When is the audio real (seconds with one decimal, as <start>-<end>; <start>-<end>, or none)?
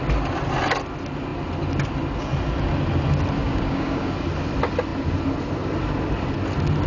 0.0-3.4; 4.1-6.9